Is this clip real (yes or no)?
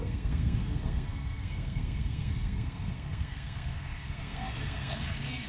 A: no